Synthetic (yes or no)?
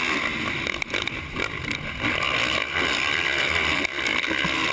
no